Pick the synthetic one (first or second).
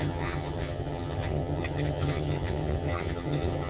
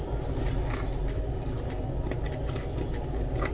first